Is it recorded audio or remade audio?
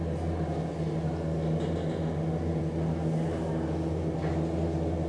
recorded